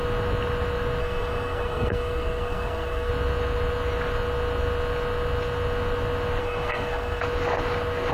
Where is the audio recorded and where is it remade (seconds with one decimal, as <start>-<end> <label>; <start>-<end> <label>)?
0.0-1.0 recorded; 1.0-3.1 remade; 3.1-6.4 recorded; 6.4-7.2 remade; 7.2-8.1 recorded